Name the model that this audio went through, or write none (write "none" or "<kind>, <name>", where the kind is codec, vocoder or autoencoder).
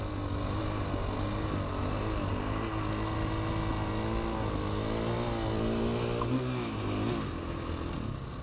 none